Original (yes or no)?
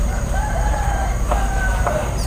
no